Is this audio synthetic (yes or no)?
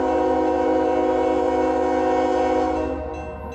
no